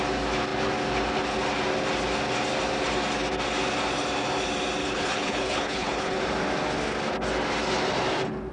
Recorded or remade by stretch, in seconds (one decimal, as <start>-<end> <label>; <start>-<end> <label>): 0.0-4.8 recorded; 4.8-6.2 remade; 6.2-8.5 recorded